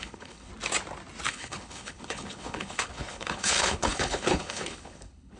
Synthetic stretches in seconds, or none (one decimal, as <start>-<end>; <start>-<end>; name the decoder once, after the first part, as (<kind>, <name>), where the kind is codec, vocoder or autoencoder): 0.0-0.5 (codec, HILCodec); 1.3-5.4